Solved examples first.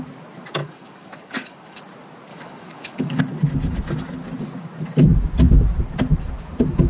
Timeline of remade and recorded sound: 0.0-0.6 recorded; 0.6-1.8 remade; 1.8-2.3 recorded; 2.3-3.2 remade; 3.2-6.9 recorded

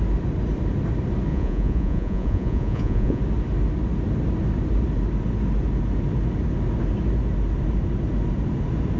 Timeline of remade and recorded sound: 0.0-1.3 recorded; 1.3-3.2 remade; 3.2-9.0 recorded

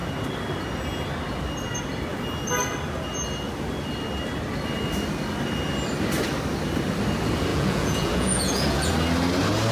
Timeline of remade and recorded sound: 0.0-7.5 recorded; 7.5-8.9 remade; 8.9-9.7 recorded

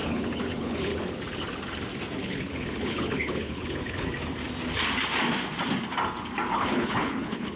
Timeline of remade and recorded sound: 0.0-1.1 remade; 1.1-2.2 recorded; 2.2-4.1 remade; 4.1-6.5 recorded; 6.5-7.6 remade